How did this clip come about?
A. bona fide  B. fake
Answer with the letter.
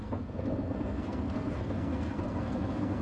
B